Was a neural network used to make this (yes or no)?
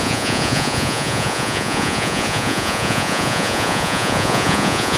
yes